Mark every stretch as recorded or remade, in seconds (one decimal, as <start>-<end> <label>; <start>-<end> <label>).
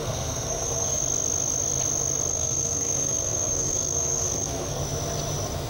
0.0-1.0 remade; 1.0-2.3 recorded; 2.3-4.8 remade; 4.8-5.7 recorded